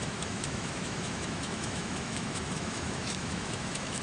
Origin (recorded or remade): remade